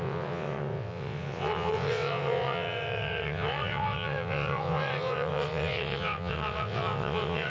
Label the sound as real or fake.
fake